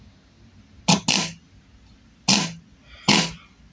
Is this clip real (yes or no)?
yes